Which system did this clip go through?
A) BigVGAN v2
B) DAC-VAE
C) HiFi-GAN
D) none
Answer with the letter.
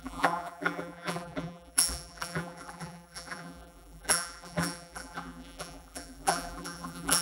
A